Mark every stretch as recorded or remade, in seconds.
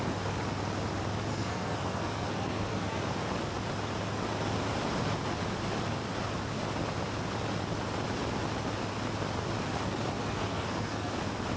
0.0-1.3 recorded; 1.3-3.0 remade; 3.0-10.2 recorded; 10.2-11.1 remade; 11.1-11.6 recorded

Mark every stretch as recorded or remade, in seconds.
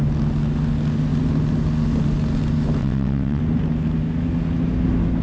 0.0-2.8 recorded; 2.8-3.4 remade; 3.4-5.2 recorded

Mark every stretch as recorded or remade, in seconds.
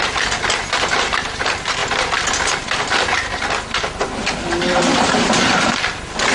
0.0-1.8 remade; 1.8-4.0 recorded; 4.0-6.3 remade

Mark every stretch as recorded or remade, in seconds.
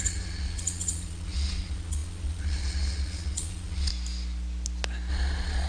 0.0-3.9 remade; 3.9-5.1 recorded; 5.1-5.7 remade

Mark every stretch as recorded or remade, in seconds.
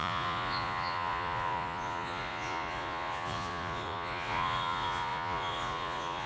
0.0-6.3 remade